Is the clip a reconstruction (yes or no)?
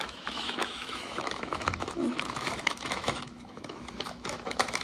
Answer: yes